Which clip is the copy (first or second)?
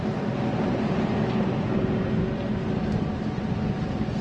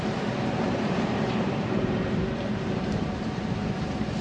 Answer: second